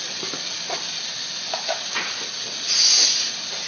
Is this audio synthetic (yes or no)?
no